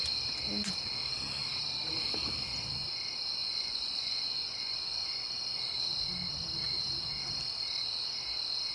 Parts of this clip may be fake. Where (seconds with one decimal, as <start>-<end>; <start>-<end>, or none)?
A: 3.4-5.3